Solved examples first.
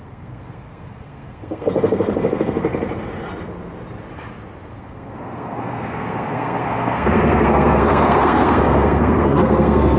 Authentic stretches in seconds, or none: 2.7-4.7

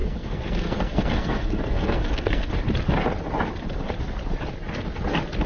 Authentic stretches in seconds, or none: 2.5-5.5